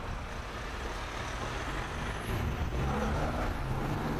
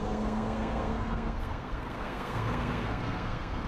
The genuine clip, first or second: first